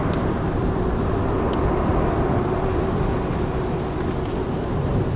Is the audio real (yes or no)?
yes